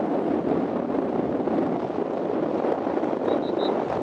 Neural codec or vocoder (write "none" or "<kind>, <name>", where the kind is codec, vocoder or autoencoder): none